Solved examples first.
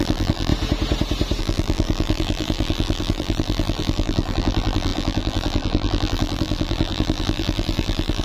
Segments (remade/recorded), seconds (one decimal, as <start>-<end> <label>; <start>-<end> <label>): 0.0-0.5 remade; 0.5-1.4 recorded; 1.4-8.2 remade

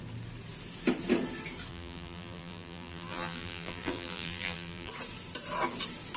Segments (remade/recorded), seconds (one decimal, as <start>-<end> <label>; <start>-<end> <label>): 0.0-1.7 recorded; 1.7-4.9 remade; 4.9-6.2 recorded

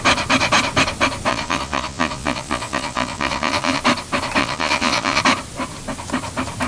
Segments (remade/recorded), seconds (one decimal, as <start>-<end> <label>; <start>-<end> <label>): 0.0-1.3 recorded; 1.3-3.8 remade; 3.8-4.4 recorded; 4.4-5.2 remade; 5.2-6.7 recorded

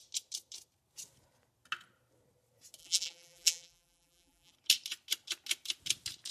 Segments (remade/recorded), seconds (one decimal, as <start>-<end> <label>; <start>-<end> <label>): 0.0-2.8 recorded; 2.8-4.5 remade; 4.5-6.3 recorded

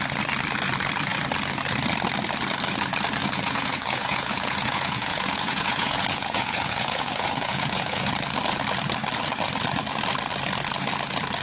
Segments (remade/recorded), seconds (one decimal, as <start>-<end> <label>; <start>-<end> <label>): 0.0-3.2 recorded; 3.2-8.1 remade; 8.1-11.4 recorded

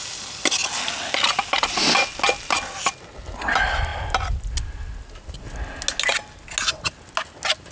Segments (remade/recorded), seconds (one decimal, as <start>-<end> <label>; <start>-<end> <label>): 0.0-7.7 recorded

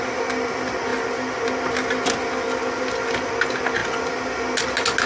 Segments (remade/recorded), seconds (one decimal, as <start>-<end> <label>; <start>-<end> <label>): 0.0-5.1 recorded

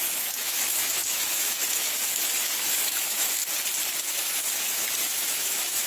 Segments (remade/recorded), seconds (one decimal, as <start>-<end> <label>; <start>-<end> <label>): 0.0-3.4 remade; 3.4-4.0 recorded; 4.0-5.9 remade